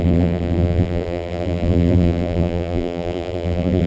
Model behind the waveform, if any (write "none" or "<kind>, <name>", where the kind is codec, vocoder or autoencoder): vocoder, BigVGAN v2